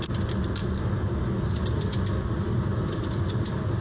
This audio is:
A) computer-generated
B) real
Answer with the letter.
B